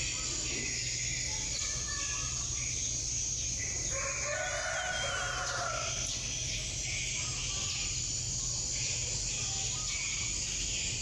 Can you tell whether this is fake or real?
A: real